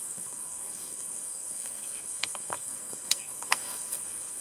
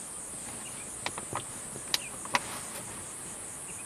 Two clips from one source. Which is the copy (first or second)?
first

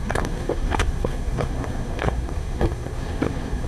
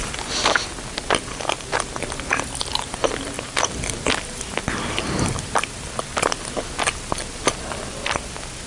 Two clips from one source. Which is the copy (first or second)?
first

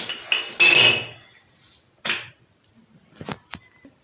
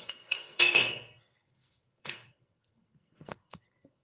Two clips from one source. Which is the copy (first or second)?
second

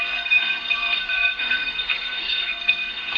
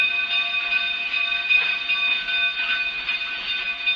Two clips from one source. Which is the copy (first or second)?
first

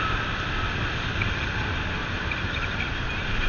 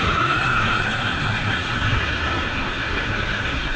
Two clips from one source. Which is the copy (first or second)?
second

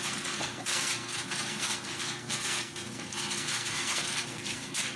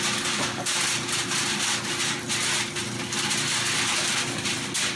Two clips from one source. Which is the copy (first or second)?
first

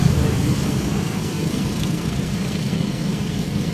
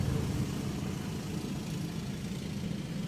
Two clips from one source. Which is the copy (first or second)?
first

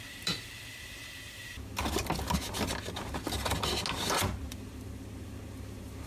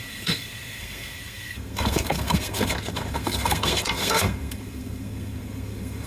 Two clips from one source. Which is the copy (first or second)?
second